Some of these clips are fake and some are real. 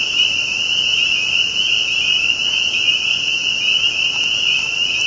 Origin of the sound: real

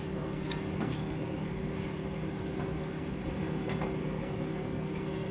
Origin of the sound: fake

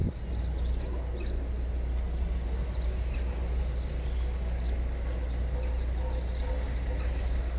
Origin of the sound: real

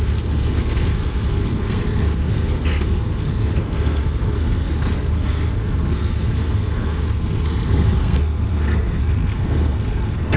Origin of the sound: fake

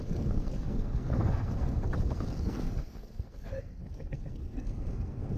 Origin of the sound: fake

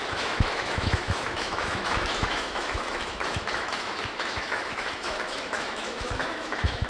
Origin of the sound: fake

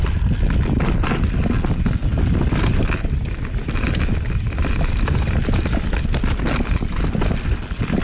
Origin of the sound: real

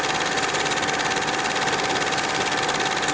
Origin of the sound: real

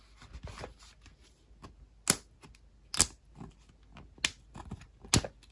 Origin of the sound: real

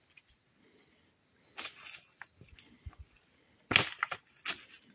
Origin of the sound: real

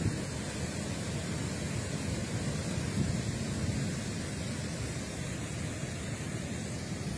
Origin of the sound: real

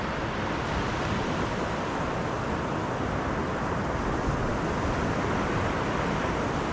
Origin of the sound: real